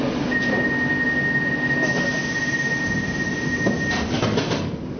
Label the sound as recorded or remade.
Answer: recorded